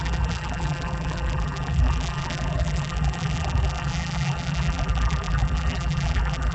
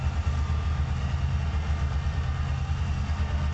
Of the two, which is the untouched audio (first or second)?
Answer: second